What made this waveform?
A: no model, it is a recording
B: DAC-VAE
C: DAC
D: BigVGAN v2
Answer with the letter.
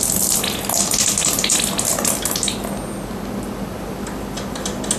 A